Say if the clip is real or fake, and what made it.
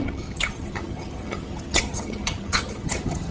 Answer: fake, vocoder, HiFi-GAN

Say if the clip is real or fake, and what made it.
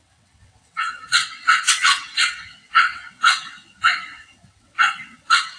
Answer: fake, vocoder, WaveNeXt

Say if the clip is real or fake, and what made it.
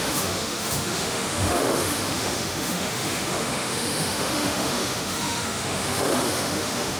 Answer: fake, autoencoder, DAC-VAE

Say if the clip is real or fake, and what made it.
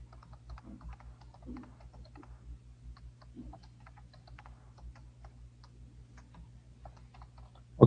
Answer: real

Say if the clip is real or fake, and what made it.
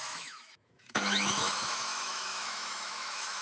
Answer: fake, autoencoder, DAC-VAE